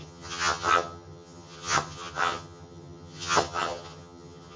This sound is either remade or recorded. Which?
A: remade